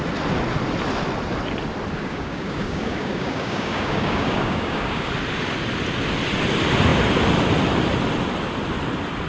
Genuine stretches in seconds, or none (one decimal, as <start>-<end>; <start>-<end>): 0.0-2.0; 5.1-9.3